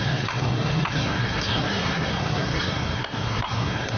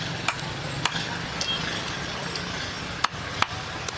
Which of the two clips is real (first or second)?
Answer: second